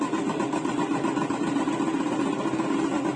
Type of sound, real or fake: real